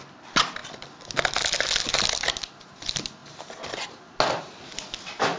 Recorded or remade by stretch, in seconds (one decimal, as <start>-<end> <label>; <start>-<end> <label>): 0.0-5.4 recorded